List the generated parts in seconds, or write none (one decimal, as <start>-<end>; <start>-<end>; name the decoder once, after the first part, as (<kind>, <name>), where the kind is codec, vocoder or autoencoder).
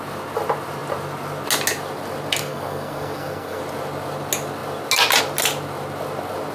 2.4-3.6 (codec, SNAC)